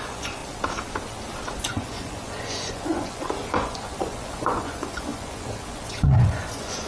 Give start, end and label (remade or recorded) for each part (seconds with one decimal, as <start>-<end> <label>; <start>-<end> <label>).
0.0-0.4 remade; 0.4-1.6 recorded; 1.6-6.9 remade